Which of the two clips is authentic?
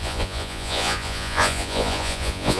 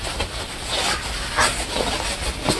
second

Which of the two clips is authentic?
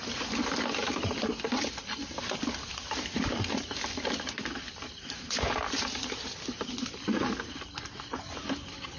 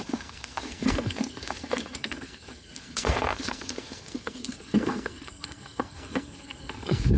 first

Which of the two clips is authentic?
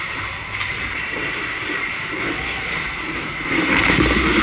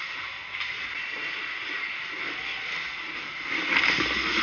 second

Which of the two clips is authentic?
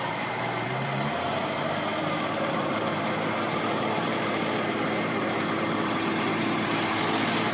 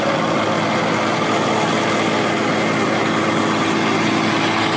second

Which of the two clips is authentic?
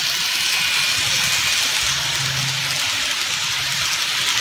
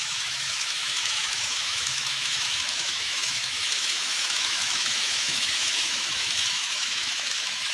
first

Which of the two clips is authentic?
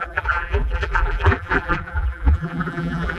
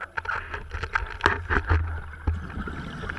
second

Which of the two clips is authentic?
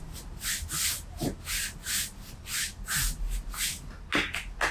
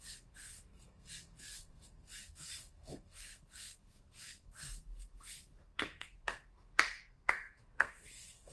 first